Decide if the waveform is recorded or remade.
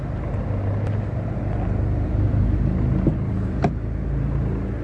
recorded